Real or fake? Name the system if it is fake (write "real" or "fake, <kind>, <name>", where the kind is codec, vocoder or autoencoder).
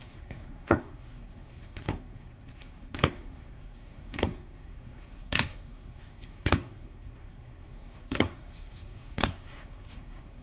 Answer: fake, codec, SNAC